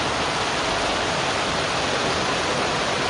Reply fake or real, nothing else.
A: real